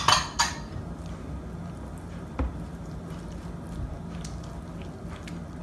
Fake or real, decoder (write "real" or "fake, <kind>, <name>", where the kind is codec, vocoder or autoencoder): real